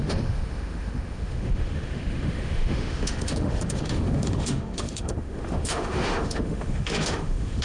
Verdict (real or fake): fake